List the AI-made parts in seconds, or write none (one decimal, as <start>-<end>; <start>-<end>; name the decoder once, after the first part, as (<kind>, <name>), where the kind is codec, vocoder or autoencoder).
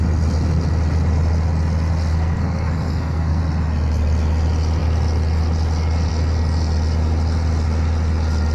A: 2.1-3.4 (codec, SNAC)